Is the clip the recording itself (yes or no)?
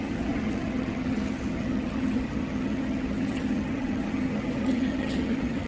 no